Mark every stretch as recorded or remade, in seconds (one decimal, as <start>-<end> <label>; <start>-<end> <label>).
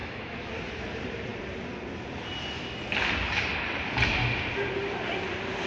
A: 0.0-0.5 remade; 0.5-5.7 recorded